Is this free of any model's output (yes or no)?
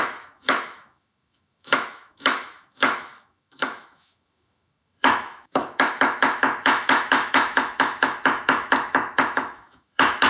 no